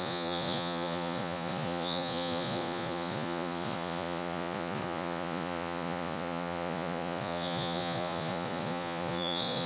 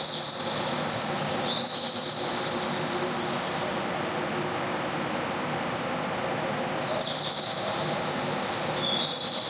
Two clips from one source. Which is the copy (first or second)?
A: first